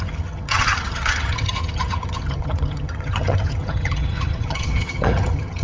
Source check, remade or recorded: remade